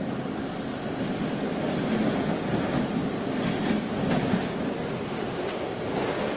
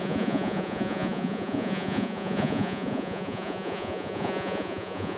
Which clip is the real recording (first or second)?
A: first